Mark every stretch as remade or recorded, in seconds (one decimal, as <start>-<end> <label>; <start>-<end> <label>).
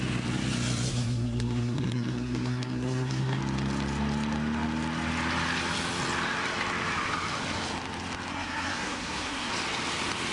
0.0-0.9 recorded; 0.9-3.4 remade; 3.4-8.3 recorded; 8.3-9.5 remade; 9.5-10.3 recorded